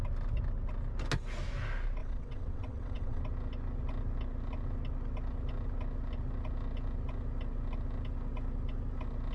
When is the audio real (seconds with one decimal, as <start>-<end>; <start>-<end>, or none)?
0.0-2.0; 3.2-9.3